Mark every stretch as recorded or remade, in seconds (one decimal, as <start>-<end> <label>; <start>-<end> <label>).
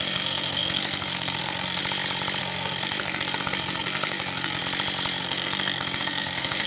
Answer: 0.0-1.8 remade; 1.8-2.4 recorded; 2.4-4.6 remade; 4.6-5.2 recorded; 5.2-6.7 remade